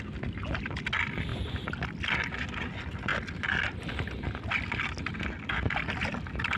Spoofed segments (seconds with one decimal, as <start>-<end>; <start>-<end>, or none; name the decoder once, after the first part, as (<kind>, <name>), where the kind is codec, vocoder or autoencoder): none